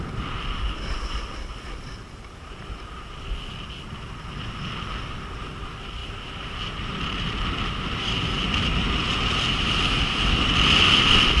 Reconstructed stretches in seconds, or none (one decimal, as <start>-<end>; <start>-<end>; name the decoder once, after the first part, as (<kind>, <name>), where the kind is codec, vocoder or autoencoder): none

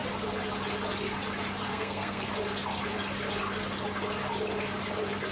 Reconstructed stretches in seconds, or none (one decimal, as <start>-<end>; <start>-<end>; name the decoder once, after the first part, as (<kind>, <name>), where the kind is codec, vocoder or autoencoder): 1.7-2.3 (codec, SNAC)

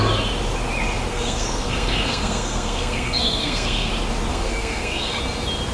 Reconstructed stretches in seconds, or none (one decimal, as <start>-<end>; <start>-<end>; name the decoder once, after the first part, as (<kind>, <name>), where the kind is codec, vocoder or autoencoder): 1.1-3.9 (codec, SNAC); 4.3-5.2